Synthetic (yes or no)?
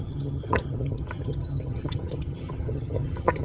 yes